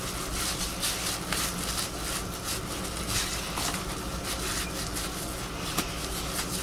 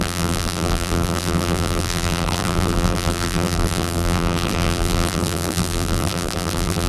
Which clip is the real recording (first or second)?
first